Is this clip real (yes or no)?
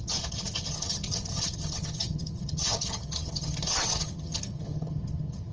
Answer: no